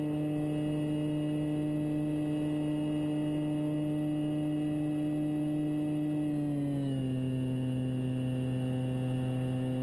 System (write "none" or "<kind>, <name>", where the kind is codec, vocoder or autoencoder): none